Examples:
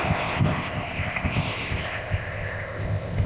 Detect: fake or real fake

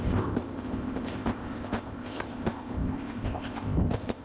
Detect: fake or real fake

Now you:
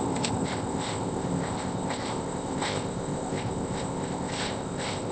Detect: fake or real fake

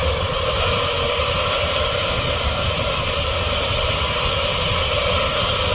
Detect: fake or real real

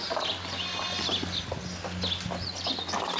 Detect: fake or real real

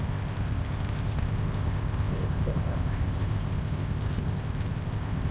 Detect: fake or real fake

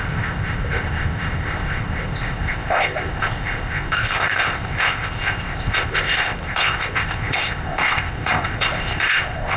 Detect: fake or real fake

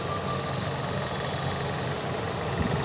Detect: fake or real real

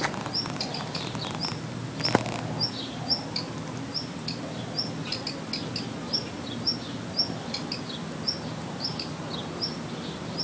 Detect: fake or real real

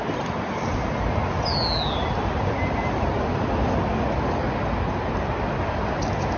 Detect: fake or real real